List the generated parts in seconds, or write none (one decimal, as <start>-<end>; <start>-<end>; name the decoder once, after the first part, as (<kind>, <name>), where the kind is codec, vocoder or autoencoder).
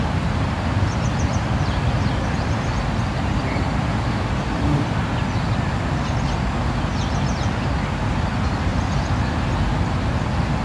8.7-9.5 (vocoder, BigVGAN v2)